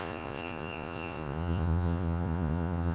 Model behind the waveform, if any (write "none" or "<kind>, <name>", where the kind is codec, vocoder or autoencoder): vocoder, Vocos